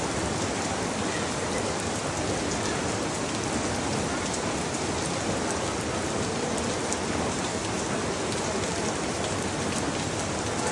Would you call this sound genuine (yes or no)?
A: yes